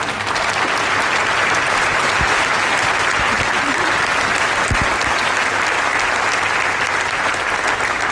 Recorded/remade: recorded